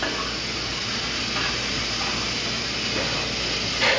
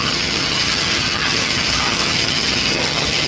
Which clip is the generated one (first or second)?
second